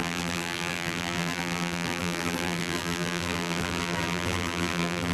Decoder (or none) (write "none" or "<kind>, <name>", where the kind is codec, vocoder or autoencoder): vocoder, BigVGAN v2